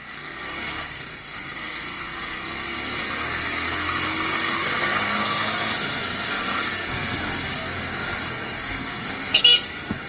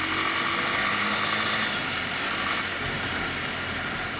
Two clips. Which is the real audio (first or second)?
second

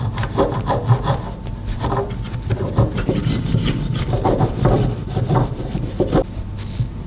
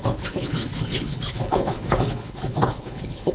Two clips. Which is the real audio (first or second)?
first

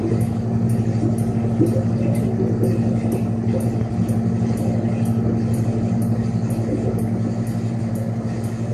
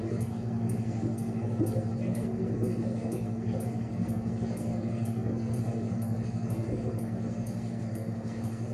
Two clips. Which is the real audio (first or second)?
first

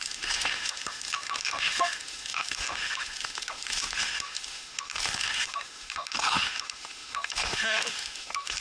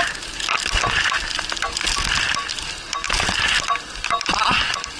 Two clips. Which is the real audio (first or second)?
second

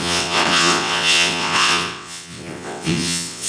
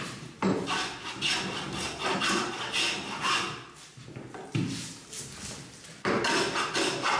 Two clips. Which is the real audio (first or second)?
second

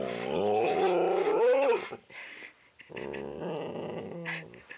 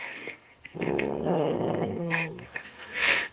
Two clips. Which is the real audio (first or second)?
first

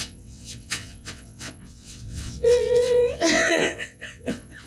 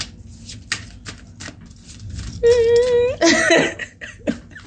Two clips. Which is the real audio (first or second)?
second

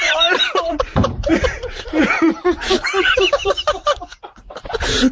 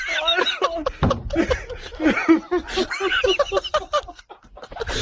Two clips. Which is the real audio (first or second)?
second